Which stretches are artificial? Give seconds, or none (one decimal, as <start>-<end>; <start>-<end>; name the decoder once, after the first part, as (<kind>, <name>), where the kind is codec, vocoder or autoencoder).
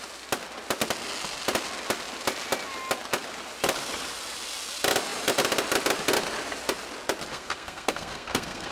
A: 7.3-8.7 (codec, SNAC)